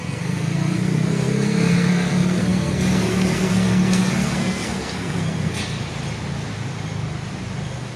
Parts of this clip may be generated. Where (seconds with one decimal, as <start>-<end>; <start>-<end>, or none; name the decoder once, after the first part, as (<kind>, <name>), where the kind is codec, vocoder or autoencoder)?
0.0-5.8 (codec, SNAC)